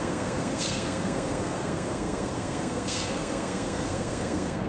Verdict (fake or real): fake